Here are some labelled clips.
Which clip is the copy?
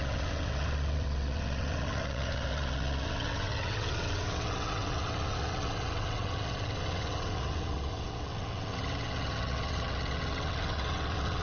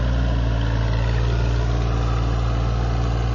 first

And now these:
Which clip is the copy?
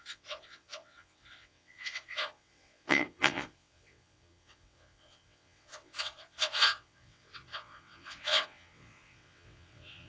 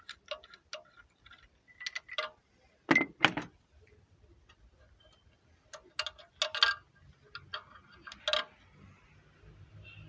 first